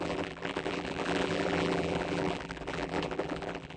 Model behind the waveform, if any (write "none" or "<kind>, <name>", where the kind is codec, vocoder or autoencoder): vocoder, BigVGAN v2